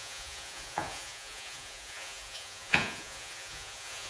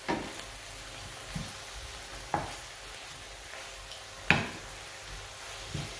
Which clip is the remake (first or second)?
first